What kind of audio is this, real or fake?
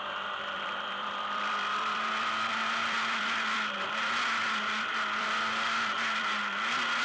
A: fake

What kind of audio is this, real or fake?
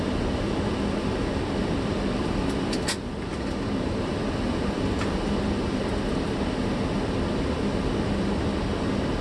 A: real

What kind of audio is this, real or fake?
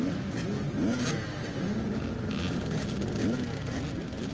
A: real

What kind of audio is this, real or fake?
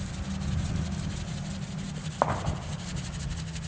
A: real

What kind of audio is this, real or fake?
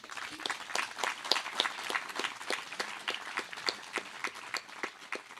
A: real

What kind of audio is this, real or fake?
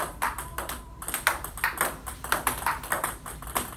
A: fake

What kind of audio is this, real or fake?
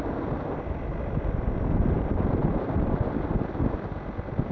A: real